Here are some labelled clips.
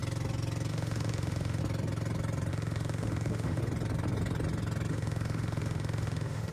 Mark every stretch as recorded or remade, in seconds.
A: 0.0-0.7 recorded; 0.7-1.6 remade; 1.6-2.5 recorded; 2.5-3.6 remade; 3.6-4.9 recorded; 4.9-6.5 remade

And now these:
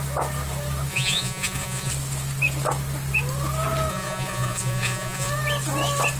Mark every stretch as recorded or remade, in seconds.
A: 0.0-0.9 recorded; 0.9-1.9 remade; 1.9-3.9 recorded; 3.9-5.3 remade; 5.3-6.2 recorded